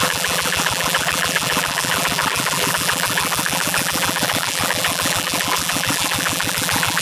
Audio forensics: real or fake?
fake